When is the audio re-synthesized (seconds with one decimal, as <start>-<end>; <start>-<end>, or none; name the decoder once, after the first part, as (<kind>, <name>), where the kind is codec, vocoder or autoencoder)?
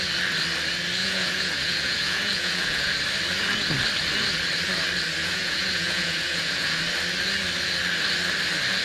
1.0-2.9 (vocoder, Vocos); 5.2-6.8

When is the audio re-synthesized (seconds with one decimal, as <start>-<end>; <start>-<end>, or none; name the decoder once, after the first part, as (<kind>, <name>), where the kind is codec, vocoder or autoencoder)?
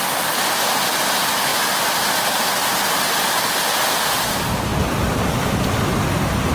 none